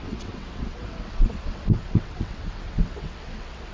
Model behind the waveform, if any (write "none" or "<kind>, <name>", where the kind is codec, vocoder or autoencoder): vocoder, WaveNeXt